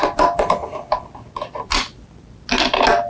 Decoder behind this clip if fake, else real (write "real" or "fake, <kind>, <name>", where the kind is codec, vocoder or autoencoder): real